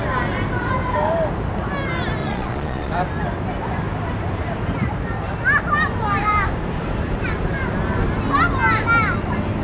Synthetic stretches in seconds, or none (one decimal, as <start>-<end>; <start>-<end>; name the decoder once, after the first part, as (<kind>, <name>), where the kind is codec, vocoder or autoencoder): 2.2-2.9 (vocoder, Vocos)